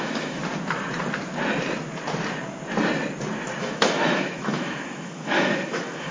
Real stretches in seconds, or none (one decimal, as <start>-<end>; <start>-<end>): 0.4-3.6